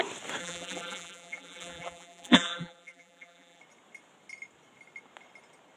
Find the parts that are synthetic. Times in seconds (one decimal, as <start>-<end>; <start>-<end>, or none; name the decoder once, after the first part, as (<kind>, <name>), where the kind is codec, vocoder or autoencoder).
0.4-3.6 (vocoder, BigVGAN v2)